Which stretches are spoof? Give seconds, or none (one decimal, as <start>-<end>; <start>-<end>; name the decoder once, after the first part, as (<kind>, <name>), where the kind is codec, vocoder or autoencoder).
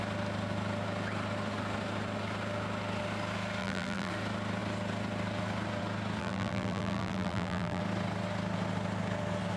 3.6-4.1 (vocoder, BigVGAN v2); 6.2-7.8